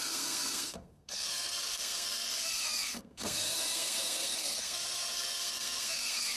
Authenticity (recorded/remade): remade